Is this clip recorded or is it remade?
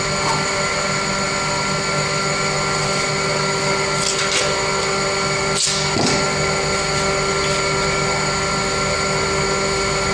recorded